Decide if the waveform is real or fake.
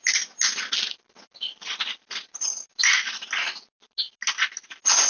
real